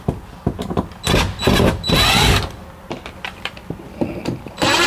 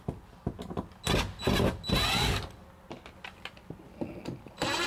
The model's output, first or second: first